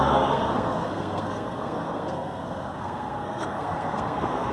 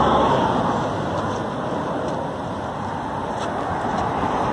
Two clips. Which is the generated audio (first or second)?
first